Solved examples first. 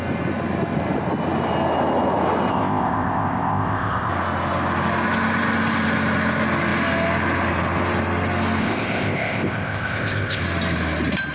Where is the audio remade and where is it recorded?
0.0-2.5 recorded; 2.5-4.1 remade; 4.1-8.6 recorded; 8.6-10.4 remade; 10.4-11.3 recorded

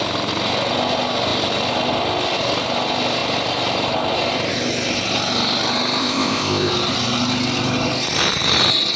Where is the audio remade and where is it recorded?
0.0-6.0 recorded; 6.0-6.7 remade; 6.7-9.0 recorded

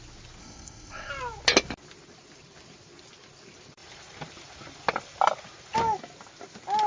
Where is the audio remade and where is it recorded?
0.0-0.4 recorded; 0.4-1.1 remade; 1.1-6.9 recorded